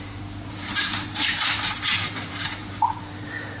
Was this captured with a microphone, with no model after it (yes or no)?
no